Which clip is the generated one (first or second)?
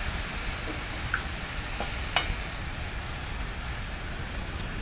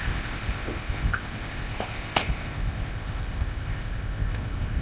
second